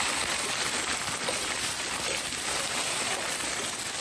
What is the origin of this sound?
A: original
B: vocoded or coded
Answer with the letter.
A